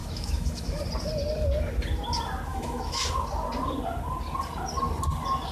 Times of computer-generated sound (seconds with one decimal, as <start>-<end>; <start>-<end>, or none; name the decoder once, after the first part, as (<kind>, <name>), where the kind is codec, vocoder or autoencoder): 0.0-0.8 (autoencoder, DAC-VAE); 2.5-3.1

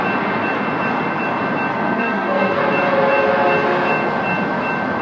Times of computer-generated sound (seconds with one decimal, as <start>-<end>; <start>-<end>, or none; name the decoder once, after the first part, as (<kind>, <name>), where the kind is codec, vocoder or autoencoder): 1.7-2.6 (codec, SNAC)

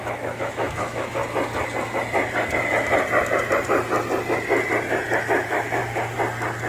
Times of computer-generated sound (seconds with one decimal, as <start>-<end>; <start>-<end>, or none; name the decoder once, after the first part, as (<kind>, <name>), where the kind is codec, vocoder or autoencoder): 0.0-1.2 (autoencoder, DAC-VAE); 5.2-5.8

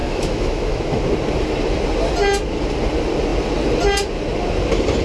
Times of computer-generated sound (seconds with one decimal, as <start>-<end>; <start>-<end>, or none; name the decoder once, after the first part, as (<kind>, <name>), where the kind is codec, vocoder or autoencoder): 0.0-1.0 (autoencoder, DAC-VAE)

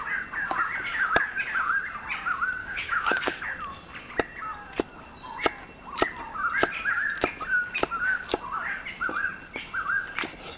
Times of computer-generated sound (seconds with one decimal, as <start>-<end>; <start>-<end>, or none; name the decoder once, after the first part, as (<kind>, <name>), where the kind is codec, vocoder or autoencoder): 2.6-3.4 (codec, DAC)

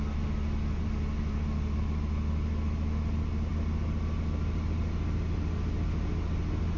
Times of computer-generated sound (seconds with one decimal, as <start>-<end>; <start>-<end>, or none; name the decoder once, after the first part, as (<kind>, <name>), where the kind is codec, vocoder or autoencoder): none

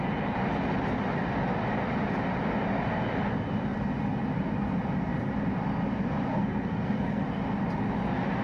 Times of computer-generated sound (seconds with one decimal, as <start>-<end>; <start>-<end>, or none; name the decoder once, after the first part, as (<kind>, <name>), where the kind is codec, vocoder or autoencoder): 6.3-7.2 (codec, SNAC)

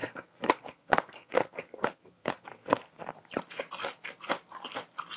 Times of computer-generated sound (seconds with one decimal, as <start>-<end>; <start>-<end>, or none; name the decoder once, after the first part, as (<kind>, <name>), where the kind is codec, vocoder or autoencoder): 0.0-3.1 (codec, SNAC)